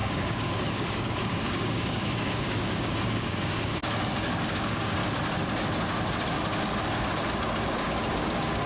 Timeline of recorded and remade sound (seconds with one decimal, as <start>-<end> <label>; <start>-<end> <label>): 0.0-3.8 remade; 3.8-4.5 recorded; 4.5-5.0 remade; 5.0-7.7 recorded; 7.7-8.7 remade